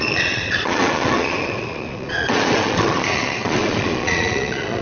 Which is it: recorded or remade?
remade